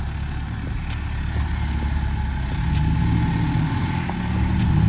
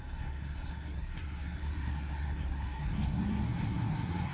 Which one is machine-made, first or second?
second